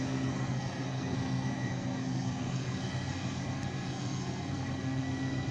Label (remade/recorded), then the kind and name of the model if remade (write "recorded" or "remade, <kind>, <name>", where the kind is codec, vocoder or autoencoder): remade, codec, SNAC